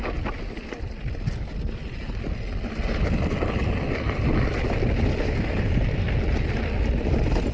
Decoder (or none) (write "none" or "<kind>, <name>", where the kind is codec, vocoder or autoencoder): none